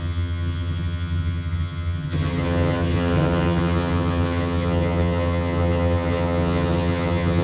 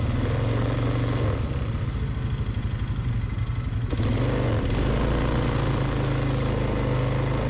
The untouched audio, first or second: second